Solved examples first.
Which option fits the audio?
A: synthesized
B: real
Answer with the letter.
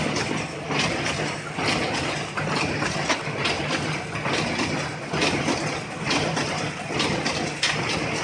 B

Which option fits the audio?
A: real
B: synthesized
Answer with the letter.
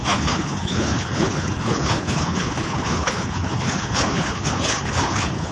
B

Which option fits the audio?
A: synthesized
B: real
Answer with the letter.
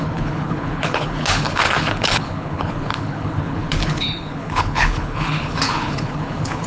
A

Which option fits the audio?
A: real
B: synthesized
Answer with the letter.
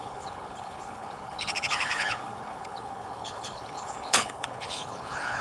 B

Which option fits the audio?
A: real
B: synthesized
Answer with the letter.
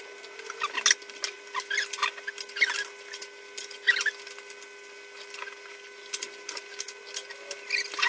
A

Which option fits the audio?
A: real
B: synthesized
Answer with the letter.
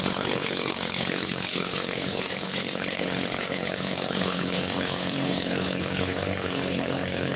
B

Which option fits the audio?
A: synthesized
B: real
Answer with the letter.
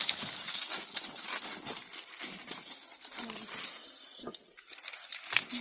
B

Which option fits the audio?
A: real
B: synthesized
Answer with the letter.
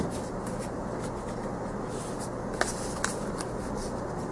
A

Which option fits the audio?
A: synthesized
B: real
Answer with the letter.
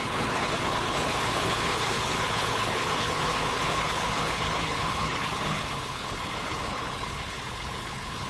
A